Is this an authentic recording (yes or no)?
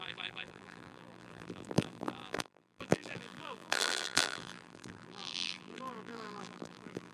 no